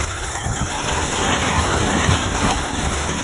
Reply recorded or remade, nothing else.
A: remade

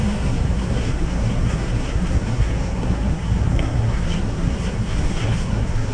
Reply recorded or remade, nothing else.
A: remade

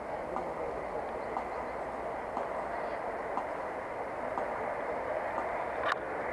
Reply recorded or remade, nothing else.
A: recorded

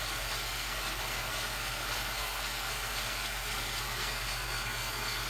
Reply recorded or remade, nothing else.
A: remade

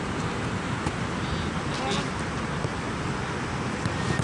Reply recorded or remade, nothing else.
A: recorded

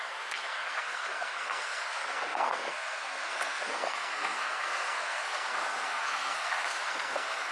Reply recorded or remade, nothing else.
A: remade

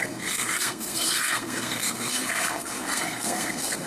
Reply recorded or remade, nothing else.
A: remade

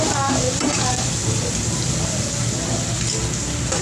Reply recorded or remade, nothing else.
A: recorded